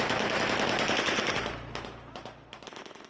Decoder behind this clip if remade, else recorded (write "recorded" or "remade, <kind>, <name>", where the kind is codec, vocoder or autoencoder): recorded